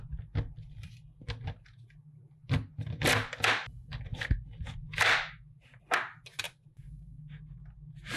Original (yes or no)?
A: yes